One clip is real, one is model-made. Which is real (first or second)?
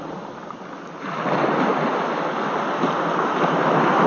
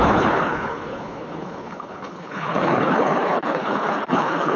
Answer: first